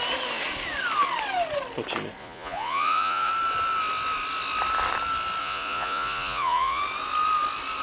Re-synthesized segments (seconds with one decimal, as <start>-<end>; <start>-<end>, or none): 2.2-3.3; 5.4-6.8